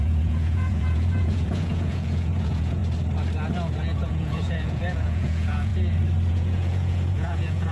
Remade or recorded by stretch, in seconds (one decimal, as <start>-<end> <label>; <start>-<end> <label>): 0.0-2.8 remade; 2.8-3.8 recorded; 3.8-5.7 remade; 5.7-6.3 recorded; 6.3-7.7 remade

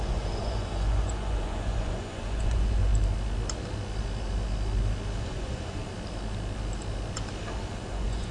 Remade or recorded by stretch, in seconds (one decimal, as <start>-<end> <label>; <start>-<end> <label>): 0.0-2.9 remade; 2.9-5.2 recorded; 5.2-5.8 remade; 5.8-7.8 recorded; 7.8-8.3 remade

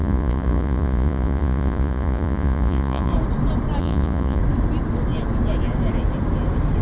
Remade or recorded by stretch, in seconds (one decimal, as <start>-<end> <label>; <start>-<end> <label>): 0.0-3.1 remade; 3.1-3.8 recorded; 3.8-4.4 remade; 4.4-6.8 recorded